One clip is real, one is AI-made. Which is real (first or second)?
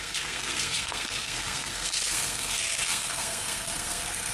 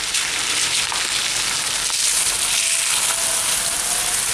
second